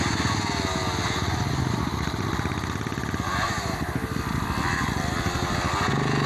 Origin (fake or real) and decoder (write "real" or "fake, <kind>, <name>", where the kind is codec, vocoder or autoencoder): real